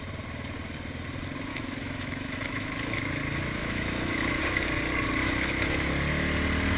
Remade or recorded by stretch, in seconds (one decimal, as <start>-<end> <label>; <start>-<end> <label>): 0.0-1.5 recorded; 1.5-3.0 remade; 3.0-3.6 recorded; 3.6-4.4 remade; 4.4-5.2 recorded; 5.2-5.9 remade; 5.9-6.8 recorded